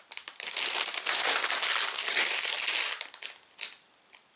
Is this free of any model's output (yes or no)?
yes